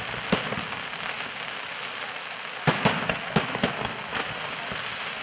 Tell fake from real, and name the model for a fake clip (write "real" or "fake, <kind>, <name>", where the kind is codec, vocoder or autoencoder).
real